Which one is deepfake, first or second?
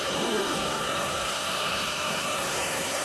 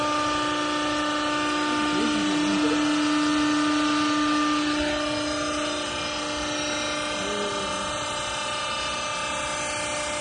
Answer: first